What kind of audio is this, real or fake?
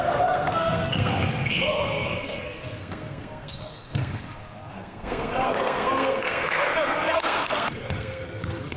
fake